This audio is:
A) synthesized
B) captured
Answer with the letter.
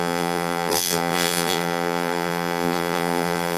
A